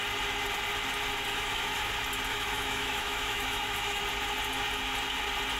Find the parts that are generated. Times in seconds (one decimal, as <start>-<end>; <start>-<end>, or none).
1.3-1.9; 2.3-4.0